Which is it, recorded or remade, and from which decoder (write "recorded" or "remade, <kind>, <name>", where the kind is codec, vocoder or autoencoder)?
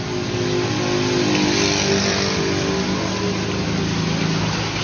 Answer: recorded